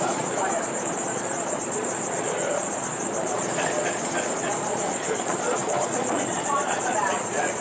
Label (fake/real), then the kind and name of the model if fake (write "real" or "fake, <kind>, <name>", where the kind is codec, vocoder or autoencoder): fake, vocoder, Vocos